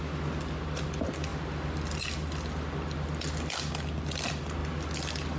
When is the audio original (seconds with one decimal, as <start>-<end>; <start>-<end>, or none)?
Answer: 0.0-5.4